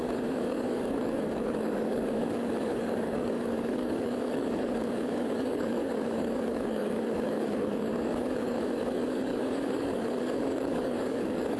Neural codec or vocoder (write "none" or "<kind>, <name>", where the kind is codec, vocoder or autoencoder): codec, DAC